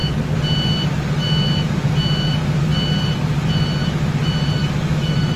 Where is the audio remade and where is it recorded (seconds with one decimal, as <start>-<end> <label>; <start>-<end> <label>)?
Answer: 0.0-4.6 recorded; 4.6-5.4 remade